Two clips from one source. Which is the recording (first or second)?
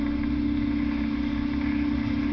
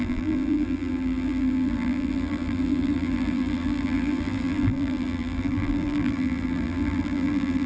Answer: first